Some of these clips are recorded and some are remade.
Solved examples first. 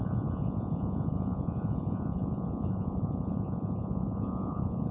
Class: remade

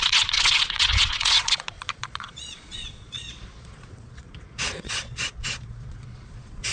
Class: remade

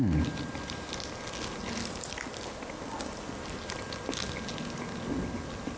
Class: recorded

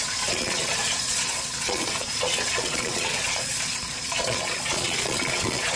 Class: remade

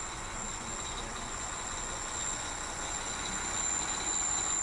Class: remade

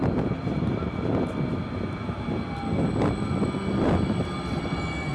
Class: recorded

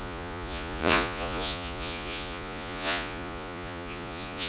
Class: remade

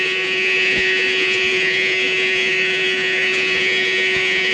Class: remade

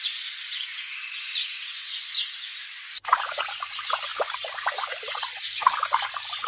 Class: recorded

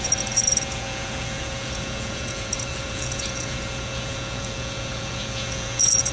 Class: remade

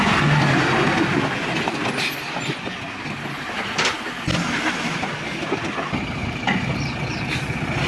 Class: recorded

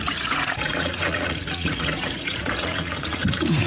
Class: remade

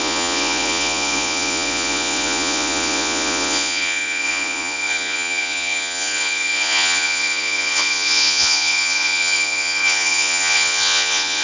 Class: remade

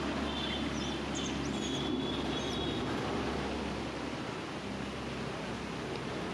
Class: recorded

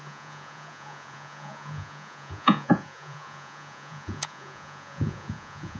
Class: remade